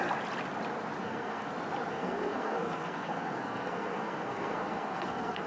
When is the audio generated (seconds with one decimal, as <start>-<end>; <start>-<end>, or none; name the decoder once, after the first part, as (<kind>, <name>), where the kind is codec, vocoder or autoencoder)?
1.0-1.5 (codec, SNAC); 1.9-5.5